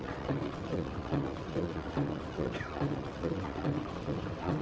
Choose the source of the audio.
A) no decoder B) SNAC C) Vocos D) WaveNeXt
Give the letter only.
D